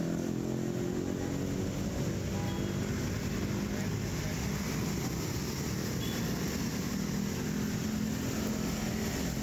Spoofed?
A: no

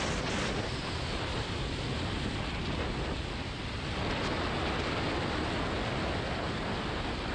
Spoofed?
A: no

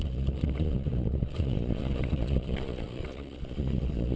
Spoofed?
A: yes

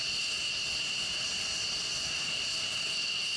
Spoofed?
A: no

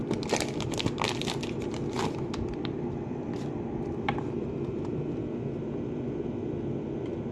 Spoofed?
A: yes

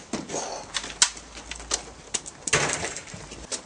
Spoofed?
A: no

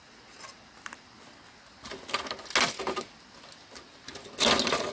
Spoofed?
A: no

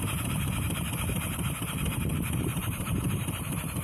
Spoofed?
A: yes